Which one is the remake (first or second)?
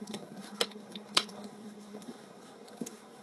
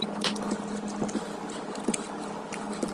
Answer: first